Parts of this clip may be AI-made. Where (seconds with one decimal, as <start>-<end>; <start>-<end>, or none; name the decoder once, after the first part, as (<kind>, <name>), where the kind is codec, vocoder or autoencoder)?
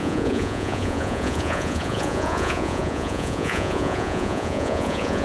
0.0-5.2 (vocoder, Vocos)